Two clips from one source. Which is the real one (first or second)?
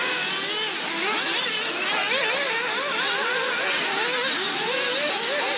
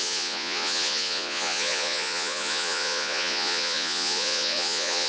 first